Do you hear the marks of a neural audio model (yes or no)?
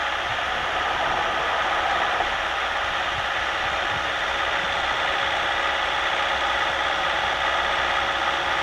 no